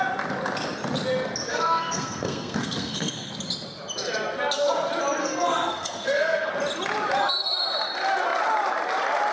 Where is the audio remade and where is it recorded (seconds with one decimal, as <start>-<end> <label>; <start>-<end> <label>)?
0.0-1.5 recorded; 1.5-3.3 remade; 3.3-5.2 recorded; 5.2-6.5 remade; 6.5-9.3 recorded